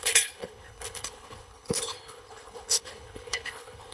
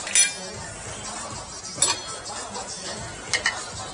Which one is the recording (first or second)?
second